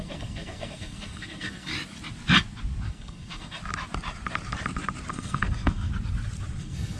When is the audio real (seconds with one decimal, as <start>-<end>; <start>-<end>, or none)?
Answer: 1.7-2.9; 3.6-5.1; 5.9-6.6